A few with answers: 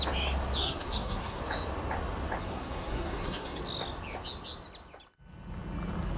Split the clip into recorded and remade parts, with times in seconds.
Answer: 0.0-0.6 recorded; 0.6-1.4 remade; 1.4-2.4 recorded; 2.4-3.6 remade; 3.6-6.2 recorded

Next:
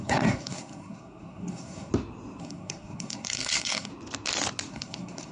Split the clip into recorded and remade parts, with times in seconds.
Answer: 0.0-1.9 remade; 1.9-2.4 recorded; 2.4-3.9 remade; 3.9-4.7 recorded; 4.7-5.3 remade

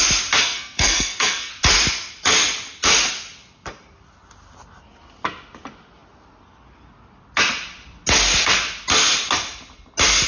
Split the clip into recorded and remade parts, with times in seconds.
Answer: 0.0-0.4 recorded; 0.4-1.5 remade; 1.5-10.3 recorded

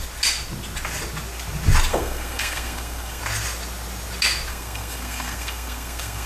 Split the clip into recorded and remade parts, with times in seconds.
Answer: 0.0-1.9 recorded; 1.9-3.2 remade; 3.2-4.5 recorded; 4.5-6.3 remade

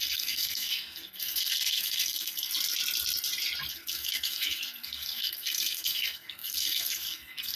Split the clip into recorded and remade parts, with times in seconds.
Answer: 0.0-2.5 remade; 2.5-3.7 recorded; 3.7-7.6 remade

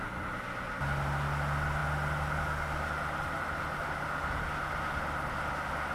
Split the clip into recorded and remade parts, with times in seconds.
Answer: 0.0-5.9 recorded